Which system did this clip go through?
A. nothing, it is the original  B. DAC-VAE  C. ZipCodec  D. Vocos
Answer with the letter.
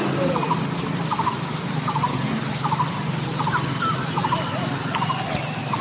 A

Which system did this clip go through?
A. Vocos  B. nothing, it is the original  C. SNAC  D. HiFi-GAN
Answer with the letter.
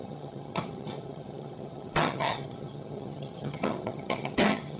D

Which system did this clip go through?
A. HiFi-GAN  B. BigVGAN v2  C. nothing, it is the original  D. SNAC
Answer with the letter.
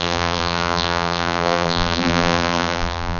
B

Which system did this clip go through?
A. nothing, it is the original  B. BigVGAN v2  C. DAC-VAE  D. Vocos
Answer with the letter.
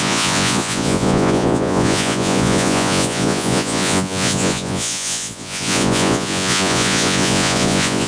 D